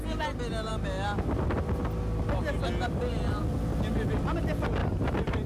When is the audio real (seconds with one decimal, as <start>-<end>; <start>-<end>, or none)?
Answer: 0.0-4.8